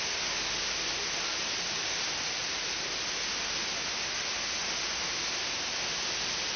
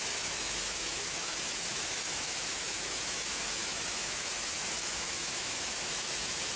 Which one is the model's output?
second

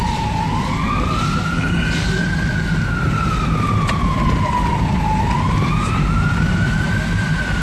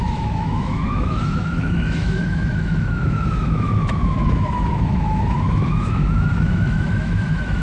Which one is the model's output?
second